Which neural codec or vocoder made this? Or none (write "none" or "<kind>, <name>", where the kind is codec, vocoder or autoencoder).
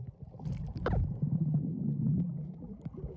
none